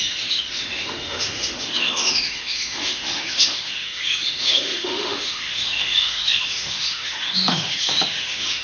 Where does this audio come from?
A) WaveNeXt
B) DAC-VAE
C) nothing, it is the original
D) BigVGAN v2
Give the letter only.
B